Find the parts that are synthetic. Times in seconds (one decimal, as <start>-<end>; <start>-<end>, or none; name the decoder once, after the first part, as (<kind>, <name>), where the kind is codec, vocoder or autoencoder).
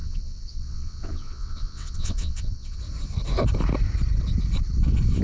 0.0-2.8 (vocoder, WaveNeXt)